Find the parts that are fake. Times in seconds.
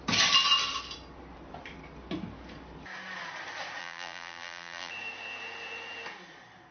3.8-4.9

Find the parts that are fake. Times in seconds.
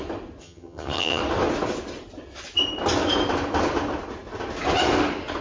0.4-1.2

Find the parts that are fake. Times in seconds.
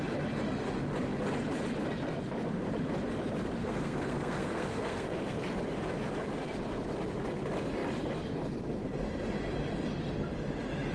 3.6-5.4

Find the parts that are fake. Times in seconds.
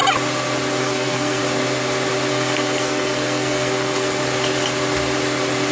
0.8-1.4; 2.3-4.2